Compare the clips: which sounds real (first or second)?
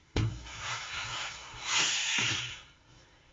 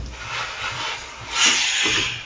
second